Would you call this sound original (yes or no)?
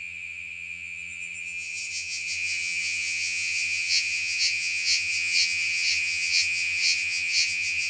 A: no